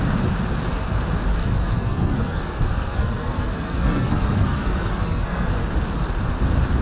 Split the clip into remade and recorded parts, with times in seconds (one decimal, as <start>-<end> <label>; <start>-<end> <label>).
0.0-1.4 recorded; 1.4-5.5 remade; 5.5-6.8 recorded